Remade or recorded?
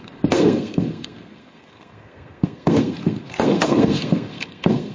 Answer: remade